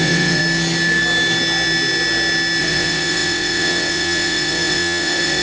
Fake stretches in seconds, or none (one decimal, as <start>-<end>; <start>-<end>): 0.0-0.4; 2.6-5.4